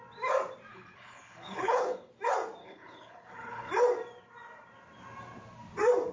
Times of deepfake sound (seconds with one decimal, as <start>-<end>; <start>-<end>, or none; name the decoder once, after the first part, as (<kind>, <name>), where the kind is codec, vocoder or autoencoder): 0.7-2.1 (codec, HILCodec); 2.6-3.7